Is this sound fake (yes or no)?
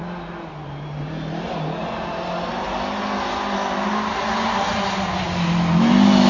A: no